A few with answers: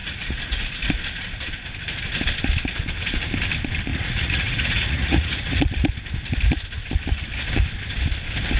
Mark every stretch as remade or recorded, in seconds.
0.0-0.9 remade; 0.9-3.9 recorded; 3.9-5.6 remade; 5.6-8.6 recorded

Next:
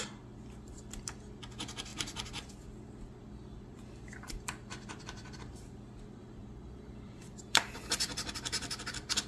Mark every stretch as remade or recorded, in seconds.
0.0-1.9 recorded; 1.9-5.6 remade; 5.6-6.2 recorded; 6.2-8.7 remade; 8.7-9.3 recorded

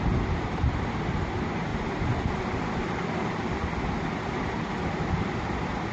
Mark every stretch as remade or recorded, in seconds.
0.0-5.9 recorded